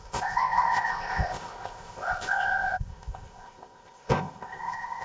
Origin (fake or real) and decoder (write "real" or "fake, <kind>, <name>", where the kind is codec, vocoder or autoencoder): fake, codec, ZipCodec